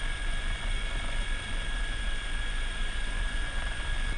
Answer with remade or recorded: remade